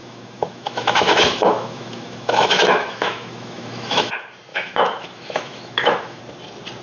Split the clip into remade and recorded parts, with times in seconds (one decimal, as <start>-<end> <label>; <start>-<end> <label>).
0.0-4.1 remade; 4.1-4.5 recorded; 4.5-6.2 remade; 6.2-6.8 recorded